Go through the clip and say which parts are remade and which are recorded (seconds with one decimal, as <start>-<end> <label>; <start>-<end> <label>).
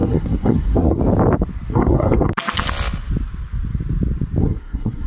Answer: 0.0-1.0 remade; 1.0-1.7 recorded; 1.7-2.3 remade; 2.3-4.4 recorded; 4.4-5.1 remade